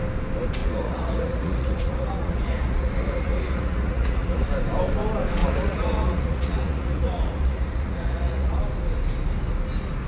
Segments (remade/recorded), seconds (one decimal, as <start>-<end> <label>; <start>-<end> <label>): 0.0-0.6 recorded; 0.6-4.5 remade; 4.5-5.4 recorded; 5.4-8.6 remade; 8.6-10.1 recorded